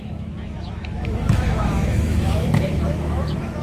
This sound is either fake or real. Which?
fake